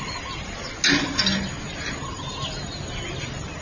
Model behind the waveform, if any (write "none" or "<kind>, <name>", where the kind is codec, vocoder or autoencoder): none